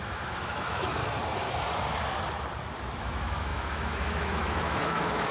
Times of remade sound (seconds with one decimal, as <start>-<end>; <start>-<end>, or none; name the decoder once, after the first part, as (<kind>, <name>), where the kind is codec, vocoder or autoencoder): 0.0-1.0 (autoencoder, DAC-VAE); 3.0-5.3